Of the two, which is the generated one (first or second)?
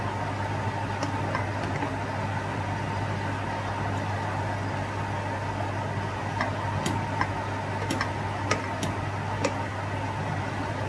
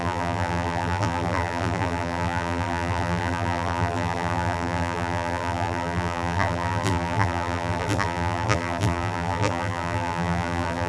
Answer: second